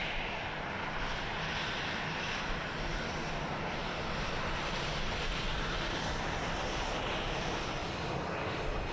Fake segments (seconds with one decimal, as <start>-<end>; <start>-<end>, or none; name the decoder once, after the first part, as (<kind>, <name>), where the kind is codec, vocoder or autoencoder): 0.0-1.0 (vocoder, BigVGAN v2); 3.8-5.1